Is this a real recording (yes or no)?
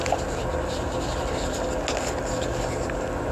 yes